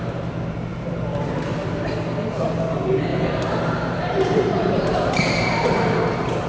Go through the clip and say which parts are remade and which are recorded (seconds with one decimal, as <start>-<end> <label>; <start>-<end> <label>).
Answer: 0.0-0.7 recorded; 0.7-1.9 remade; 1.9-3.1 recorded; 3.1-6.0 remade; 6.0-6.5 recorded